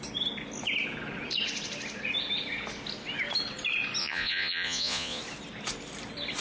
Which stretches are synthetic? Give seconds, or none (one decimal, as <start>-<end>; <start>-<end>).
4.0-5.2